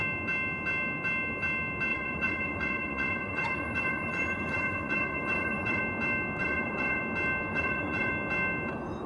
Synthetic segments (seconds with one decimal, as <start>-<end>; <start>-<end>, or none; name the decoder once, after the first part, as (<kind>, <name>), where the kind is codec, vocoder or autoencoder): 1.9-5.8 (vocoder, Vocos); 6.4-7.0; 7.5-8.1